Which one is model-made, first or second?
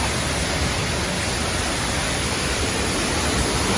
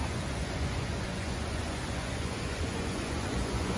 second